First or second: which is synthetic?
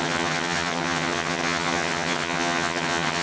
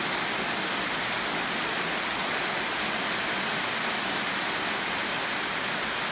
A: first